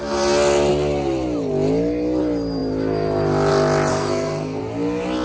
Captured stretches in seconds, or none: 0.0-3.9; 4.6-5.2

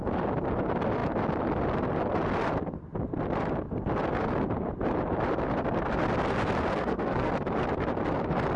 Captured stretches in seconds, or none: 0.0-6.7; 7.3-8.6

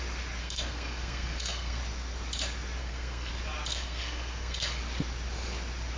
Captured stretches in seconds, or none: 0.0-0.4; 1.8-2.8; 3.3-3.7; 4.8-6.0

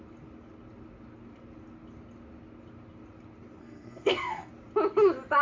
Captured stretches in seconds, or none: 0.0-3.6; 4.5-5.4

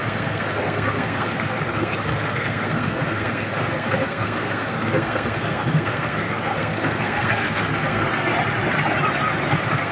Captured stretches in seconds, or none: 8.3-9.5

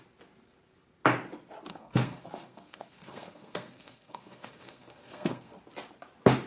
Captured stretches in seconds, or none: 0.0-1.7; 5.6-6.5